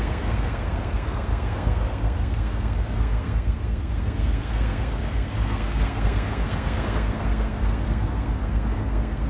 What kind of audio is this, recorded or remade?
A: remade